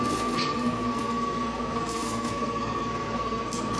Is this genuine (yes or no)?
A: no